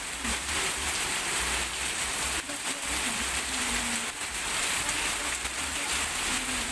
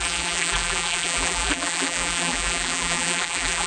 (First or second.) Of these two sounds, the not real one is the second